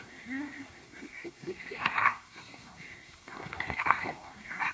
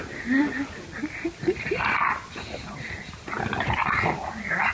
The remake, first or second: first